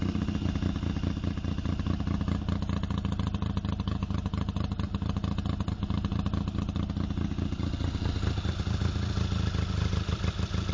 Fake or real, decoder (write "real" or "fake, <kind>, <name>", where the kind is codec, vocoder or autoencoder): real